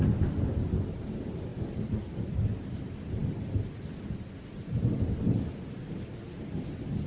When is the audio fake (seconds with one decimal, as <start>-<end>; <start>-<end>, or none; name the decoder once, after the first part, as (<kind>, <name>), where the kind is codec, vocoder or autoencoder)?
none